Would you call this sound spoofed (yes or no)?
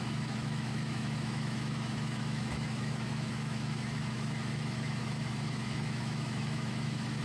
yes